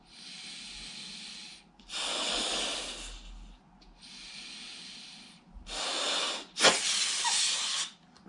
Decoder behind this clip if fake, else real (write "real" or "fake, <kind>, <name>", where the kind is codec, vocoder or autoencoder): real